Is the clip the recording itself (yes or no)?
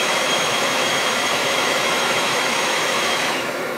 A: no